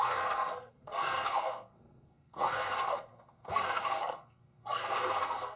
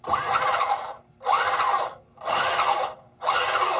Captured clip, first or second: second